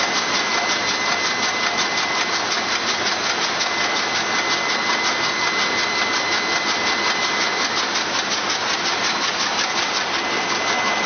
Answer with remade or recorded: recorded